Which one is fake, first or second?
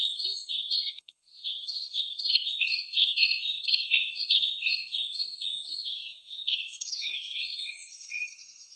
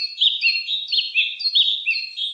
first